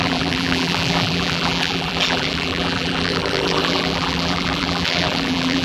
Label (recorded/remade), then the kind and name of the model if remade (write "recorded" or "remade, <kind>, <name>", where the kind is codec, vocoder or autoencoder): remade, vocoder, BigVGAN v2